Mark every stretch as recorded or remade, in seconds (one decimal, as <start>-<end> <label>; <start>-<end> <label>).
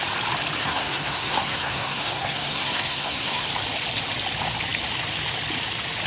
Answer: 0.0-0.6 recorded; 0.6-3.5 remade; 3.5-6.1 recorded